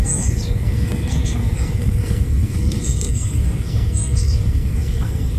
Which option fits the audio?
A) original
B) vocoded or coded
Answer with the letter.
B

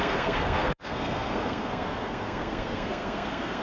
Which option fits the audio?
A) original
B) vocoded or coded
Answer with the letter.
B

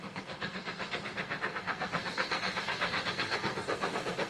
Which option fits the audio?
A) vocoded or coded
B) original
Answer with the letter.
A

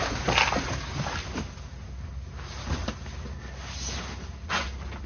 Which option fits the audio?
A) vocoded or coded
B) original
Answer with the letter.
B